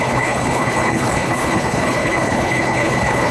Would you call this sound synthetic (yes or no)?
yes